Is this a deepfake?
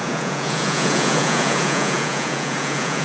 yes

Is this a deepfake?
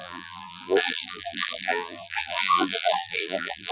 yes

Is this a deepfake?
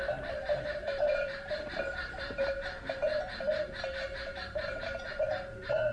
yes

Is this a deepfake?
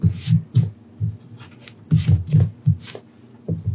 no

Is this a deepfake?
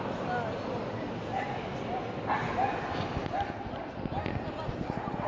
no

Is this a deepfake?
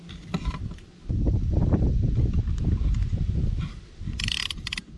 no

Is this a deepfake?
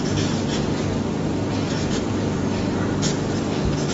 no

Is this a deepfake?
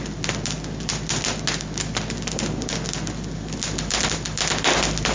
no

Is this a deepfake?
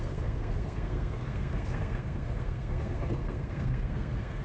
yes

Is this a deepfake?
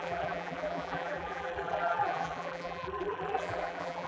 yes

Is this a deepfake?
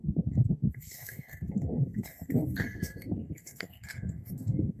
yes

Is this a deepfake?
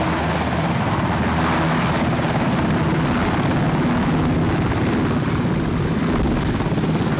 no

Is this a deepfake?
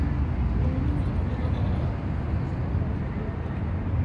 no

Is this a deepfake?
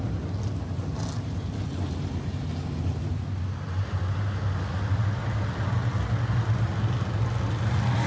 no